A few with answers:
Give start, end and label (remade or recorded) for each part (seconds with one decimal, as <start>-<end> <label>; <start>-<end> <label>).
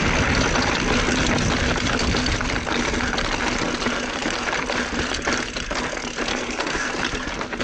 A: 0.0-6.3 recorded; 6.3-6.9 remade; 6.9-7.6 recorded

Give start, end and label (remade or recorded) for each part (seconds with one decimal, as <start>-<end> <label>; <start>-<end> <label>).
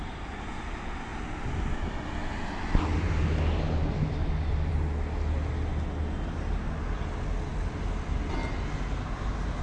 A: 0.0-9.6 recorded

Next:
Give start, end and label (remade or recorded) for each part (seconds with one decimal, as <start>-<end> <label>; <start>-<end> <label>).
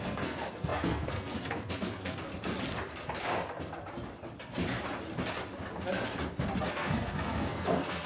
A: 0.0-2.3 remade; 2.3-6.7 recorded; 6.7-8.1 remade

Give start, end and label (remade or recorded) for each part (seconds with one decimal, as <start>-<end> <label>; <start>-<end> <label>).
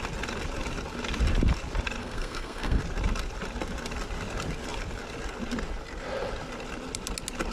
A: 0.0-2.0 recorded; 2.0-2.8 remade; 2.8-7.5 recorded